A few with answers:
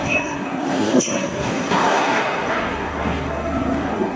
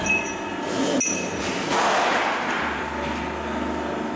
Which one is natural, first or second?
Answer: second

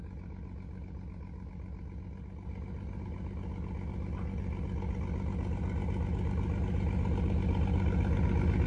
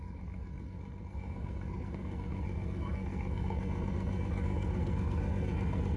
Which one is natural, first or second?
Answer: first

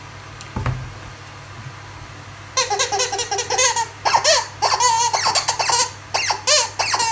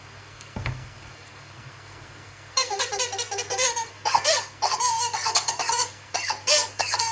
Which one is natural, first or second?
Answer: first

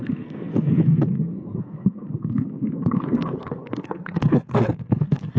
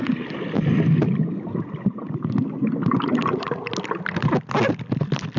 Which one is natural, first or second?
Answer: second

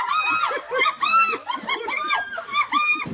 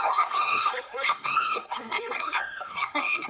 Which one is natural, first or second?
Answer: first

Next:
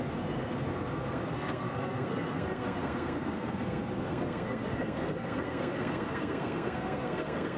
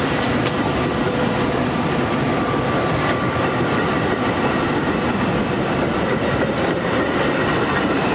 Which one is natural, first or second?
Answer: second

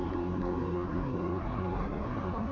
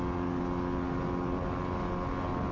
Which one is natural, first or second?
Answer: second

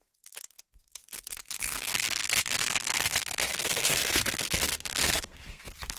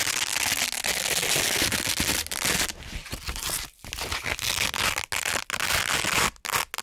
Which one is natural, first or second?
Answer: second